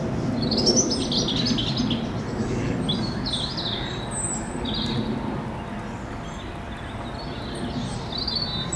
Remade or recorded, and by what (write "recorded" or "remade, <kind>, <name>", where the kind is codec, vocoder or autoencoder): recorded